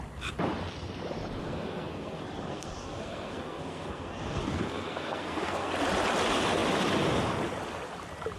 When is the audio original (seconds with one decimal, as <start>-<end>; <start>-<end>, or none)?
0.0-1.4; 5.7-8.4

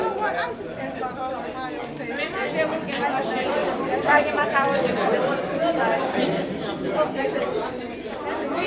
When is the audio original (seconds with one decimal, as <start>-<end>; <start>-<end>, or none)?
0.0-3.6; 4.4-8.7

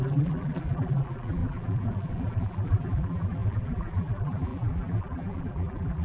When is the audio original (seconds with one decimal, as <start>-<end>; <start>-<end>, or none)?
none

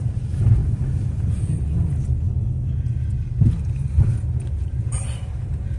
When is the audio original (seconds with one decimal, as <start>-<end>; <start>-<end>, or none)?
0.6-4.0

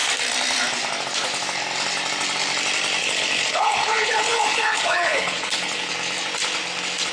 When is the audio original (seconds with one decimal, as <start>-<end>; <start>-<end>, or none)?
0.0-3.0; 5.9-7.1

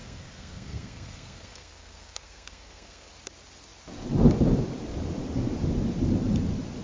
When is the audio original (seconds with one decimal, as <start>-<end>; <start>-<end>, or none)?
3.1-6.8

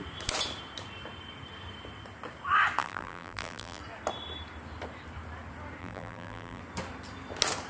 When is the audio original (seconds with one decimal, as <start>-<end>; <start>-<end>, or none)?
0.0-2.8; 3.8-5.8; 6.6-7.7